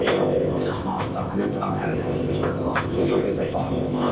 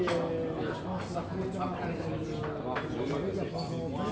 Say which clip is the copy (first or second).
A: first